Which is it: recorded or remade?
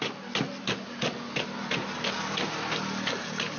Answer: recorded